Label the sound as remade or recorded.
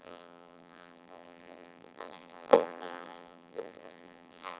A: remade